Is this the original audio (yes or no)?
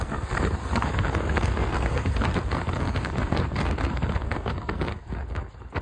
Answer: no